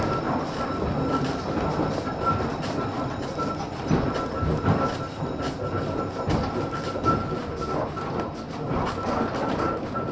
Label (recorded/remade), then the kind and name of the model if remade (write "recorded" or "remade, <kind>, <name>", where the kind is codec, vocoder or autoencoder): recorded